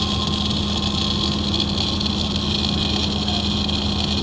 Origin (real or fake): real